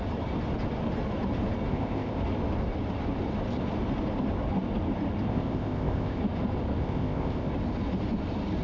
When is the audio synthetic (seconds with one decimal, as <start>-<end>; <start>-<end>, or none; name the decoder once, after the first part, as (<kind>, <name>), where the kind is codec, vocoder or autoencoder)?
1.7-2.2 (codec, ZipCodec); 5.3-6.2; 6.8-7.5